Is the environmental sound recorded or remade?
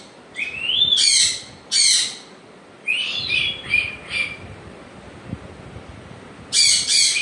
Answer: remade